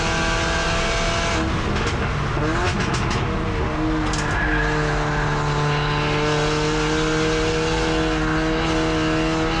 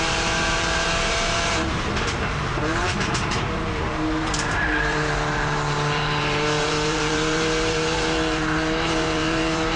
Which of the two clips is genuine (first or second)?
first